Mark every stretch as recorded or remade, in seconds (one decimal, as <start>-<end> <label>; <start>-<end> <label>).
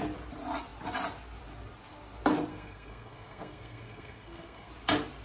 0.0-2.5 recorded; 2.5-4.7 remade; 4.7-5.2 recorded